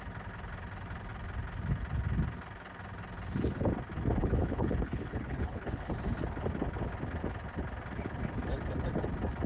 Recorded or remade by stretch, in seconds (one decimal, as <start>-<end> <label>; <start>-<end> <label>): 0.0-4.2 recorded; 4.2-5.9 remade; 5.9-9.5 recorded